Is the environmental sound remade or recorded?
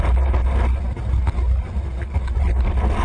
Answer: recorded